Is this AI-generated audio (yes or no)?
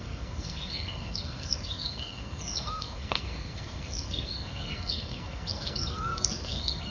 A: yes